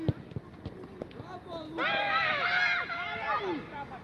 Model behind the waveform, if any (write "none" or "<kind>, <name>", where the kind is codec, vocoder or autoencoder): none